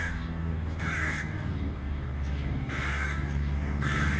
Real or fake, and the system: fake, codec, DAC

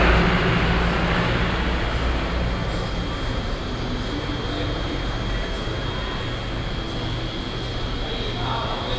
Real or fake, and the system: real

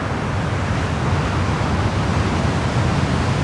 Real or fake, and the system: real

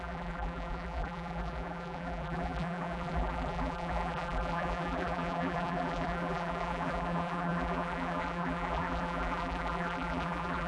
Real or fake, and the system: fake, vocoder, BigVGAN v2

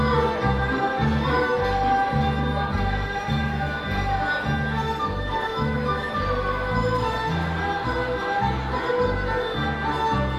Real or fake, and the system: real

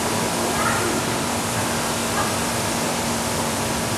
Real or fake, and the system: fake, vocoder, BigVGAN v2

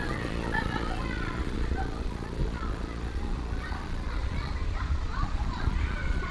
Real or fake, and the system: fake, vocoder, Vocos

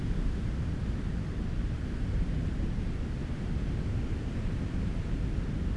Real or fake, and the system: real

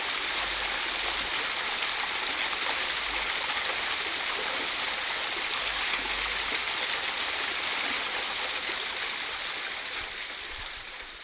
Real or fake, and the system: real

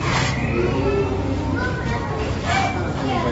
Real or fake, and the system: real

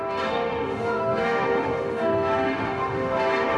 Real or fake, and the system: fake, autoencoder, DAC-VAE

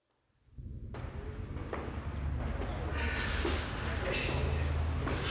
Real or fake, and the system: real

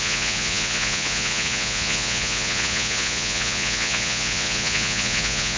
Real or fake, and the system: fake, vocoder, Vocos